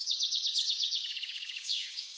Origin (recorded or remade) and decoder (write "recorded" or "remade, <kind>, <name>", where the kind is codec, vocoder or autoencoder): remade, codec, DAC